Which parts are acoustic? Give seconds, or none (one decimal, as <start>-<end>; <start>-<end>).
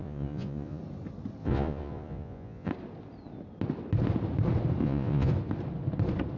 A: 0.8-1.4; 2.7-4.8; 5.3-6.4